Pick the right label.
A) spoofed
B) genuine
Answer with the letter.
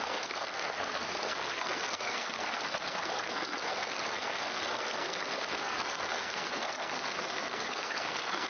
A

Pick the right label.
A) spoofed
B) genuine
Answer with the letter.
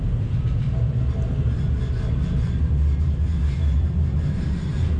B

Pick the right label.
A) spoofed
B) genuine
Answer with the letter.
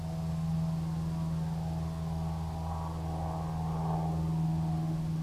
B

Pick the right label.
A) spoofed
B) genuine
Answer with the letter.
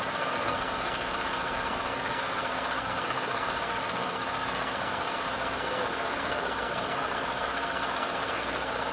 A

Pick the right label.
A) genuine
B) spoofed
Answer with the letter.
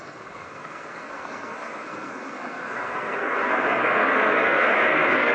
B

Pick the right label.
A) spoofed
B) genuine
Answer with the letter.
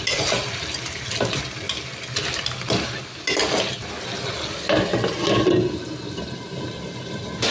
B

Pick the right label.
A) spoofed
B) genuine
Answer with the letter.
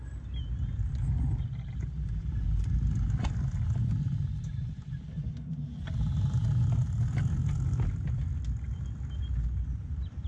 B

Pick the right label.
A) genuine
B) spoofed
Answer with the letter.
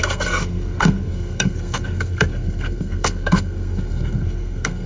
B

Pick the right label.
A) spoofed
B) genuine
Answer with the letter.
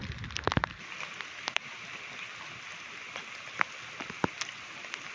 B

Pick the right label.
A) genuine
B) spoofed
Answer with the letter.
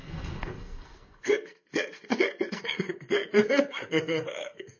B